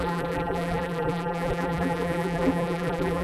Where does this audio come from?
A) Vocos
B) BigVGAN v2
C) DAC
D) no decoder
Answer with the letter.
B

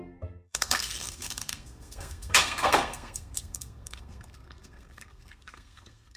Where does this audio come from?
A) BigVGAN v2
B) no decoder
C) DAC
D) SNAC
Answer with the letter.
D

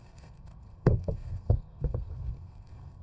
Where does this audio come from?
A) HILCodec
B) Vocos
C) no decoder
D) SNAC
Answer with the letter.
D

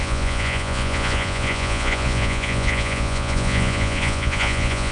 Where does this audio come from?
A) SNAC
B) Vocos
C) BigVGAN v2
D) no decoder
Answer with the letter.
B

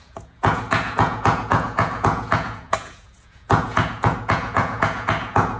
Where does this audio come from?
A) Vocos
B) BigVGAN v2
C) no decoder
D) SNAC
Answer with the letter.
A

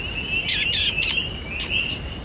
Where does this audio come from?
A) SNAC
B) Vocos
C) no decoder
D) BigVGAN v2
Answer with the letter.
C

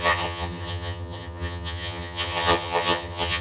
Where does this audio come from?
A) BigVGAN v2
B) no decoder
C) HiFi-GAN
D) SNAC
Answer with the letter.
C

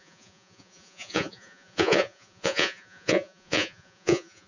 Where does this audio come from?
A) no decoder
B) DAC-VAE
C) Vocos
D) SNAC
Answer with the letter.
C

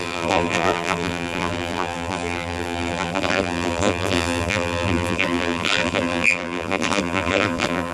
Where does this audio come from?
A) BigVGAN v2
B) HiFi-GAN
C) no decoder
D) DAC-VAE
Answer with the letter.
A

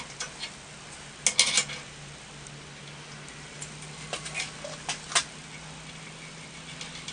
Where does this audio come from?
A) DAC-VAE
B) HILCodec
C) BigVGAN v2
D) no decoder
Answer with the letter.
D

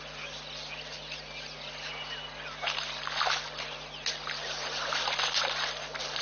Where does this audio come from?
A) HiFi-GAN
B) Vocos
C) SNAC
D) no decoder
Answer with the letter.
D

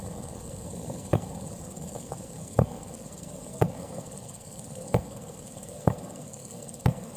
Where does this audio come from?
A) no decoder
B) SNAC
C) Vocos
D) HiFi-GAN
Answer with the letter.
B